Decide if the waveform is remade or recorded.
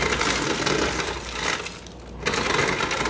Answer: recorded